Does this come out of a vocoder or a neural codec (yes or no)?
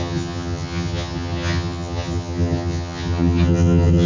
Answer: yes